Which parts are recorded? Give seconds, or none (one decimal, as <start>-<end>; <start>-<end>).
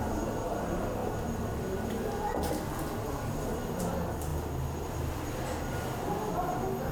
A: 0.0-6.9